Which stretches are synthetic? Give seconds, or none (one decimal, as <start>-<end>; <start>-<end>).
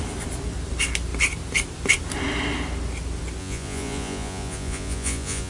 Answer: 3.4-5.5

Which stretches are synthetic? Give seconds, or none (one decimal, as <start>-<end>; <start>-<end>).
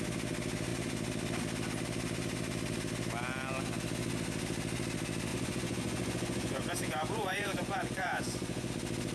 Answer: 5.3-8.7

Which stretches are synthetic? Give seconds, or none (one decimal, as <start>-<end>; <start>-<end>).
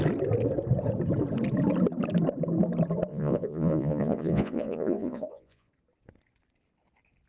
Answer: 3.1-5.7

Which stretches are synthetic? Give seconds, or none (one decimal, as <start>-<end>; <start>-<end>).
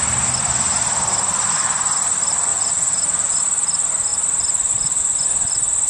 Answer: 2.5-3.4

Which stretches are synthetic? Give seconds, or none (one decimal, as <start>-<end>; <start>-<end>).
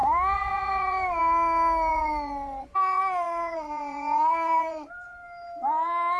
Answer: 0.0-1.2; 1.9-4.9